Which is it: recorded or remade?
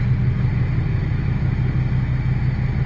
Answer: recorded